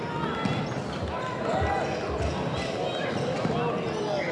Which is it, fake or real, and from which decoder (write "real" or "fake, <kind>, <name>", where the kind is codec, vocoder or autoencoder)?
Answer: real